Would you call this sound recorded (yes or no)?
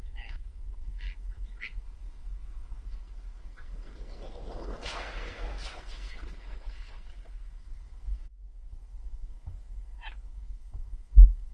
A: no